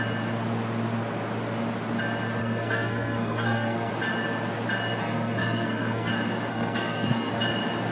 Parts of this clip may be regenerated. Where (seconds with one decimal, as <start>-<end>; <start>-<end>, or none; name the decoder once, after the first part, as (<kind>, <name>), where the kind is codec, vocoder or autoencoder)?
2.4-3.9 (codec, SNAC); 5.0-6.1; 6.5-7.3

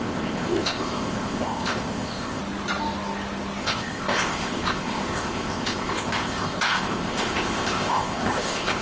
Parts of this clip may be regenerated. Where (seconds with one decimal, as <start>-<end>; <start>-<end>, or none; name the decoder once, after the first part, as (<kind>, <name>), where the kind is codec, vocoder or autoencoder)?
0.0-2.4 (codec, ZipCodec); 3.6-8.8